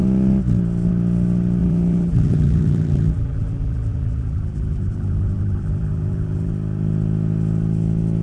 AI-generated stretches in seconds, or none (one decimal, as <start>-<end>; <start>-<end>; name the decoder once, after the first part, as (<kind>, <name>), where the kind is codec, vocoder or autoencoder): 1.6-6.5 (vocoder, BigVGAN v2)